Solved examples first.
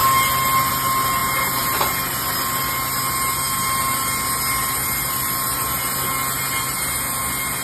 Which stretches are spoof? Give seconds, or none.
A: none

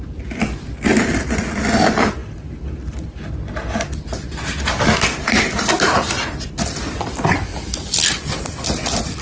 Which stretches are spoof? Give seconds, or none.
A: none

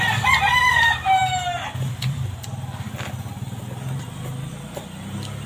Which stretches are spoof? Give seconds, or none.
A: none